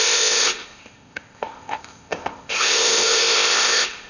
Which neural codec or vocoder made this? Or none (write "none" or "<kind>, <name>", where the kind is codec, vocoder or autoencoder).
codec, ZipCodec